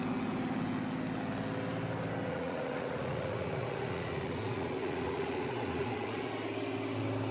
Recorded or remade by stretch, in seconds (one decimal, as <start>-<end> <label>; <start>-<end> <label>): 0.0-2.3 recorded; 2.3-6.3 remade; 6.3-7.3 recorded